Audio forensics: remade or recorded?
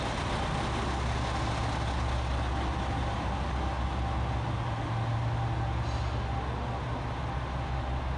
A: recorded